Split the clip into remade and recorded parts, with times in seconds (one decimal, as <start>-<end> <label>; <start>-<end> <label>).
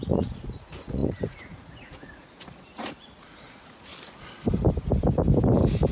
0.0-3.9 remade; 3.9-5.9 recorded